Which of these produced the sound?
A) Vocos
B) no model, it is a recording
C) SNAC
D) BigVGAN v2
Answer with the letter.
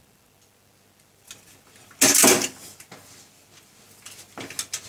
B